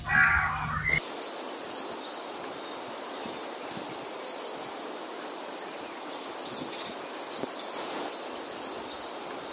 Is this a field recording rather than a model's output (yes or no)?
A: yes